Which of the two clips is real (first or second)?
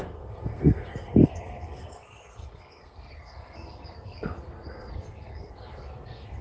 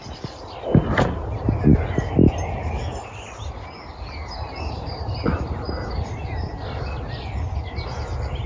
second